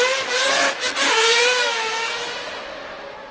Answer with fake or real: real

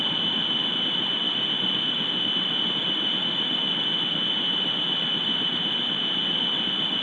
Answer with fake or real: real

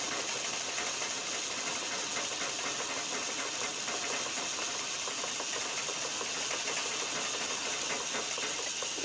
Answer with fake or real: real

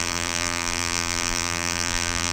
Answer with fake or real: fake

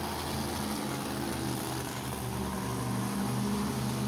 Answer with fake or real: real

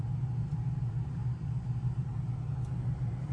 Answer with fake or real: fake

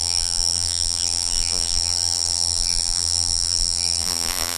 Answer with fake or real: fake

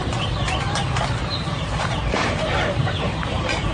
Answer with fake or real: fake